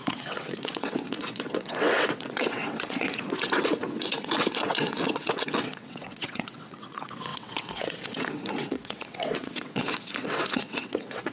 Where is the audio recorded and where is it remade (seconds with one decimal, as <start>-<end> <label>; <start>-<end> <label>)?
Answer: 0.0-11.3 remade